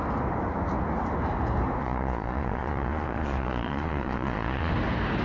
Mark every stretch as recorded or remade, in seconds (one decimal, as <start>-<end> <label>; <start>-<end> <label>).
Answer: 0.0-1.8 recorded; 1.8-4.7 remade; 4.7-5.2 recorded

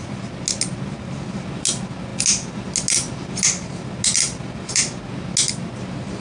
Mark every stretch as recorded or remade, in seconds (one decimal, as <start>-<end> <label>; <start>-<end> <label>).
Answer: 0.0-6.2 recorded